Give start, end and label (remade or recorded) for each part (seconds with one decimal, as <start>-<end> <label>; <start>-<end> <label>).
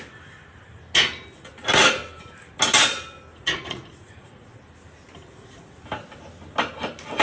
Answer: 0.0-3.3 recorded; 3.3-4.5 remade; 4.5-7.2 recorded